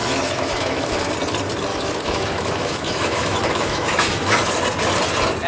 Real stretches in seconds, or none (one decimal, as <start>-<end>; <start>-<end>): 1.1-1.7; 4.5-5.5